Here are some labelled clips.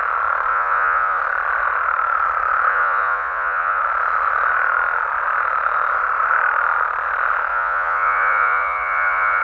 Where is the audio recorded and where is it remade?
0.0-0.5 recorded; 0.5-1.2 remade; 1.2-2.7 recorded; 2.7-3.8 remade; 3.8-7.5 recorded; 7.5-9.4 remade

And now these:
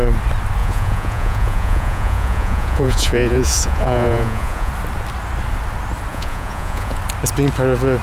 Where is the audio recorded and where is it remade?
0.0-0.6 recorded; 0.6-4.7 remade; 4.7-6.1 recorded; 6.1-7.0 remade; 7.0-8.0 recorded

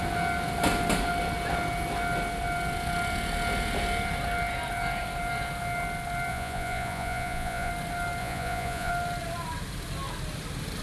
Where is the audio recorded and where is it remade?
0.0-6.3 recorded; 6.3-7.7 remade; 7.7-8.2 recorded; 8.2-8.9 remade; 8.9-10.8 recorded